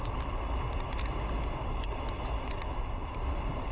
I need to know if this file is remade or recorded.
remade